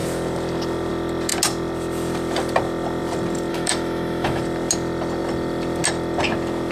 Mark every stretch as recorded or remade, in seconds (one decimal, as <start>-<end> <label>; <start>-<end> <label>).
0.0-3.5 recorded; 3.5-4.4 remade; 4.4-6.7 recorded